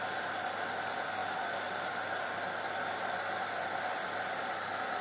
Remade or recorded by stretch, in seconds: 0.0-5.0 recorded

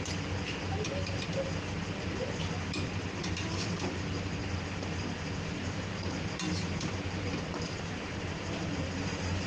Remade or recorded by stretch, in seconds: 0.0-9.5 recorded

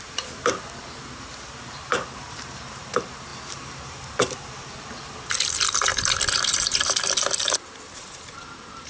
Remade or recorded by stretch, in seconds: 0.0-8.9 remade

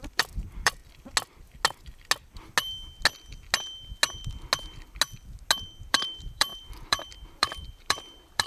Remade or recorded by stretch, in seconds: 0.0-0.8 remade; 0.8-5.9 recorded; 5.9-8.5 remade

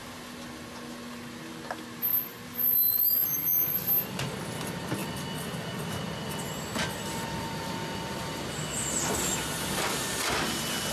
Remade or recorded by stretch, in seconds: 0.0-3.2 recorded; 3.2-4.1 remade; 4.1-10.9 recorded

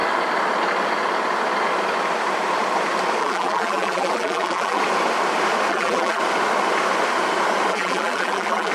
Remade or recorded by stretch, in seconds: 0.0-3.2 recorded; 3.2-4.8 remade; 4.8-5.7 recorded; 5.7-6.2 remade; 6.2-7.7 recorded; 7.7-8.7 remade